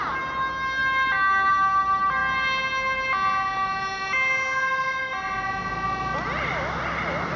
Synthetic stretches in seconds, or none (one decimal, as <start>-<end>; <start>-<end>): none